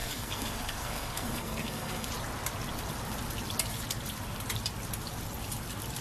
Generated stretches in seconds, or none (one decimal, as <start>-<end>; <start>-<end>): 0.0-2.1